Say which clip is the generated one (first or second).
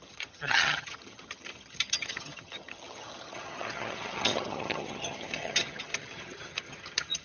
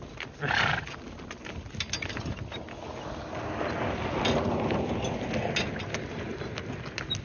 first